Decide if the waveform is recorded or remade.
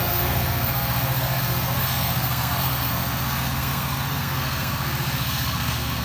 remade